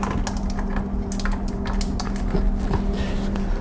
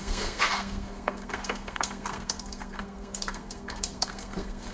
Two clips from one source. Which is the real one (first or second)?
first